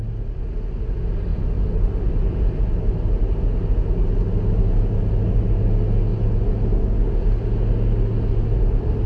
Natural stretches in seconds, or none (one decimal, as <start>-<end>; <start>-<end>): 0.0-9.1